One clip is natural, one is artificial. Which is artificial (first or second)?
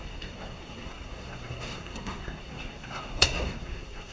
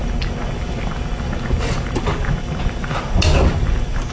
first